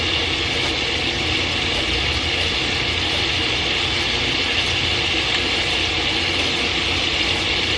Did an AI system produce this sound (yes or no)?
no